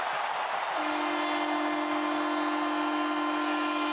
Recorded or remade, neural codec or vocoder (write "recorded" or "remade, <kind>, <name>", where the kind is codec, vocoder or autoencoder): recorded